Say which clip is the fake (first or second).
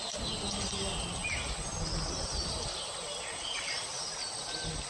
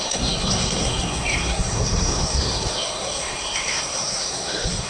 second